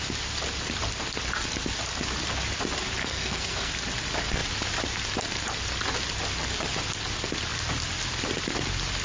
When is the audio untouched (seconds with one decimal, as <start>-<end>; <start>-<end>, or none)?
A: 0.0-3.0; 3.7-9.0